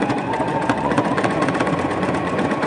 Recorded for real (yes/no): no